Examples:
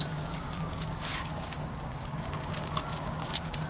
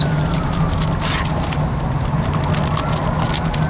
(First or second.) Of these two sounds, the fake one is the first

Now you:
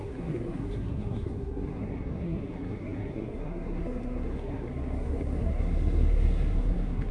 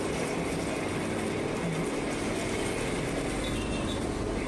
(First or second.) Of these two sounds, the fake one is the first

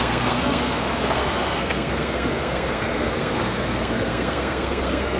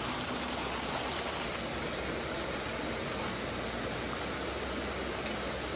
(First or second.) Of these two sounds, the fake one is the first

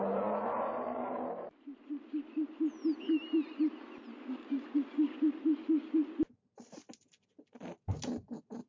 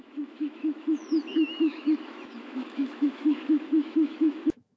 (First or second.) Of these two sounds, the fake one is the second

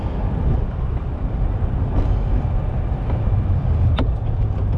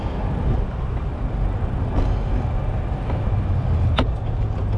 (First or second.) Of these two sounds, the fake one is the first